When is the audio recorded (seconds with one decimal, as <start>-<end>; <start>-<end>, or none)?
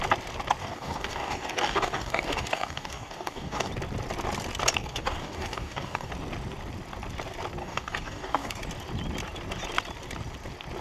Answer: 0.0-0.6; 3.7-4.8; 6.1-7.6; 8.6-10.8